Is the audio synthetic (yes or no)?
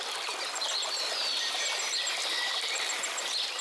no